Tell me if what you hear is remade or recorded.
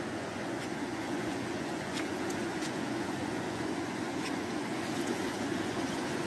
remade